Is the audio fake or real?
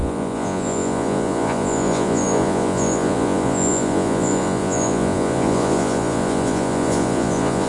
fake